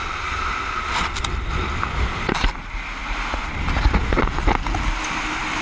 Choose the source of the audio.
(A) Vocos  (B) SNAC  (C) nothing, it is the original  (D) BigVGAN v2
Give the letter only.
C